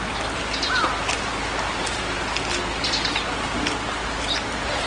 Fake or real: real